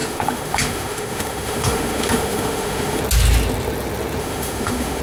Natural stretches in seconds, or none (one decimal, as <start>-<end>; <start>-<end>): 3.0-4.2